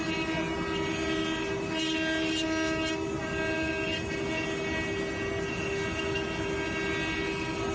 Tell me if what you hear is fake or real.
real